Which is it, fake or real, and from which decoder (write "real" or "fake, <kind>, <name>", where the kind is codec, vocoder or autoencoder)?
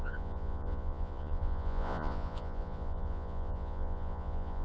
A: fake, vocoder, Vocos